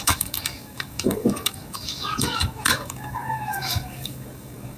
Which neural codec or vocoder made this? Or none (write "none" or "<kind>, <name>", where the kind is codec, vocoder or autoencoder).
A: codec, DAC